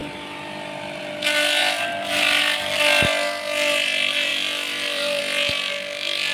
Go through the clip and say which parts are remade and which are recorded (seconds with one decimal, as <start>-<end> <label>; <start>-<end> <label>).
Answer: 0.0-1.0 remade; 1.0-1.6 recorded; 1.6-2.4 remade; 2.4-4.3 recorded; 4.3-5.2 remade; 5.2-6.3 recorded